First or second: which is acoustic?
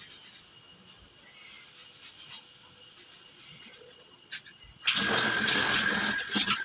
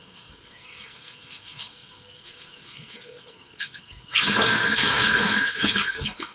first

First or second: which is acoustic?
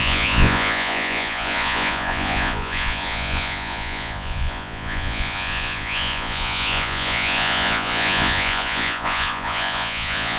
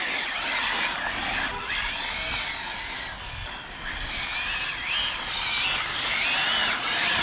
second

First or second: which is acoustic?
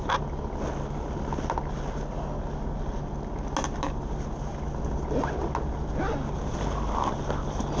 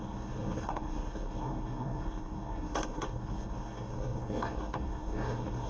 first